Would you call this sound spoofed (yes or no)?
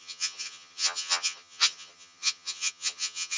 yes